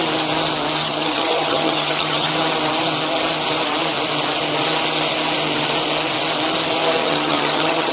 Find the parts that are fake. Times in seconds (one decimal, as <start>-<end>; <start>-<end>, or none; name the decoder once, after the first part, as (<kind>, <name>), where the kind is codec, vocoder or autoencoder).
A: 0.8-2.3 (vocoder, HiFi-GAN); 7.0-7.9